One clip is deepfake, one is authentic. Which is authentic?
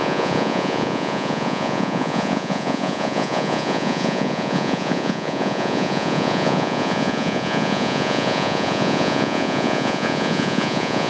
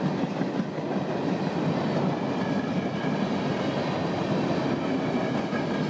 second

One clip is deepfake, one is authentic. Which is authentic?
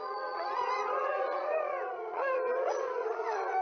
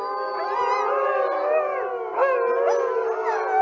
second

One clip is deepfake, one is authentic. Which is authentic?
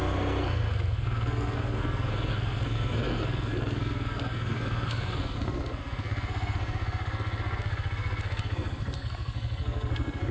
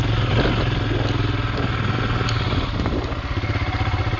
second